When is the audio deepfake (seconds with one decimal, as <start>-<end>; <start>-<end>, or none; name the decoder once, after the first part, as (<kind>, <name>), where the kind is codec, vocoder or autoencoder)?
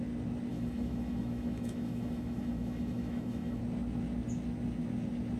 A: 0.5-3.6 (autoencoder, DAC-VAE)